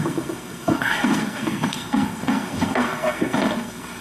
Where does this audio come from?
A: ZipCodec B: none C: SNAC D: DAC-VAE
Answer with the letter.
C